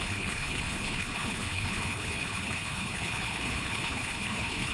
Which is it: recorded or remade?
remade